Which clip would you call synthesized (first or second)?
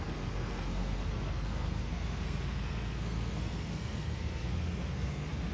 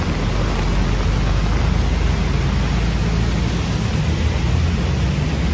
first